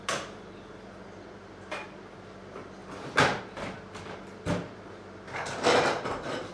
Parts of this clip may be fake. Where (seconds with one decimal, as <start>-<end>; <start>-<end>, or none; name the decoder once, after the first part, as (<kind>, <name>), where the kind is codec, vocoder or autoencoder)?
none